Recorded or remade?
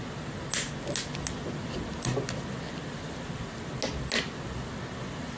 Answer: recorded